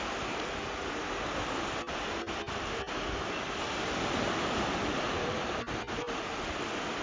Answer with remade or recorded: recorded